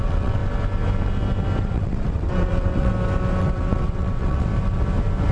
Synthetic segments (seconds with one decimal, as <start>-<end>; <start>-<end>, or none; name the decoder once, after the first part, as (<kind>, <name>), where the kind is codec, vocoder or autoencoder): 0.0-0.4 (vocoder, WaveNeXt); 1.6-2.9; 3.4-4.5